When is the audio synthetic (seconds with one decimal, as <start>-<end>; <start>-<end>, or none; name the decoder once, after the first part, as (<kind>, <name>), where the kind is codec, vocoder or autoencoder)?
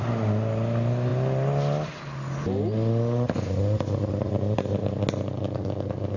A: none